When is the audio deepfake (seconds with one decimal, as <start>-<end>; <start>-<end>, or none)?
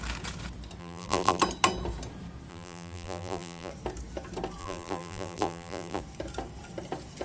0.8-1.4; 2.5-3.7; 4.6-6.0